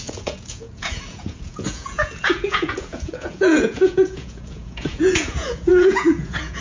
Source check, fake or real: fake